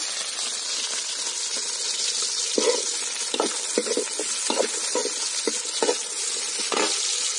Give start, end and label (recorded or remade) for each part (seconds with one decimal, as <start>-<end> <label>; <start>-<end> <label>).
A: 0.0-7.4 recorded